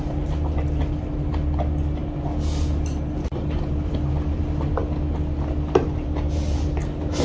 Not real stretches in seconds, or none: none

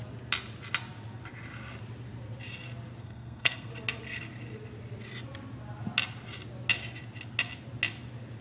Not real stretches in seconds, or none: 3.0-3.7 (codec, SNAC)

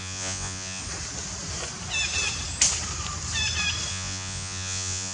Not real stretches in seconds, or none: 0.0-0.8 (vocoder, Vocos); 3.9-5.1